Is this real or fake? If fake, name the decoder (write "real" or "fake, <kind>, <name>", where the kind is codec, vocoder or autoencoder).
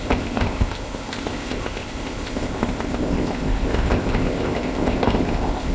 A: fake, codec, ZipCodec